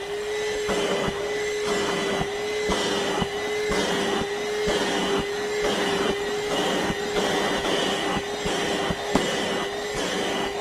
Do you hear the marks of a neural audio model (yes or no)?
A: no